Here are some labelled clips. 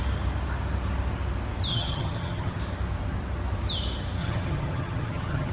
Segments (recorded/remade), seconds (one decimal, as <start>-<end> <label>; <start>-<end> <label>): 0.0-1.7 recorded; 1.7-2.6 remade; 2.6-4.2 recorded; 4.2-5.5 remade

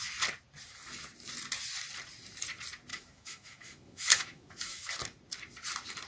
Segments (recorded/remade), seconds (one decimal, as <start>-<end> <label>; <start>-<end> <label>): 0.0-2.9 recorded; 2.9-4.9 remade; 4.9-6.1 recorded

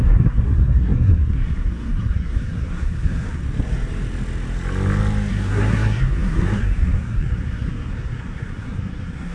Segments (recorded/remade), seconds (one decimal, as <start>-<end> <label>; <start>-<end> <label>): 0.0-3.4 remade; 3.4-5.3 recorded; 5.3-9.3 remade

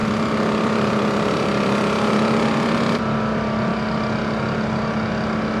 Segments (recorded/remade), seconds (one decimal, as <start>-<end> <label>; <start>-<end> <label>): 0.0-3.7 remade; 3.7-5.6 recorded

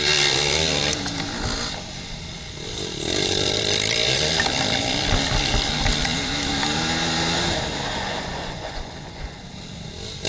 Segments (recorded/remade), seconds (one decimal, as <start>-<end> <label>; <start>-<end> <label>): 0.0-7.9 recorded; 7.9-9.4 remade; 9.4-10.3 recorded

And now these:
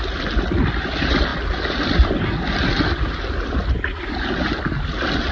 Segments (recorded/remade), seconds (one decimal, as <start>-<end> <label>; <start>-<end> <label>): 0.0-5.3 recorded

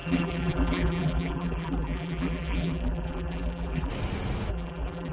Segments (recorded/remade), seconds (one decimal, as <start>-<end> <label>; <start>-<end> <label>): 0.0-3.9 remade; 3.9-4.5 recorded; 4.5-5.1 remade